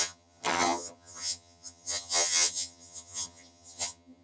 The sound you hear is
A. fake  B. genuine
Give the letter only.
A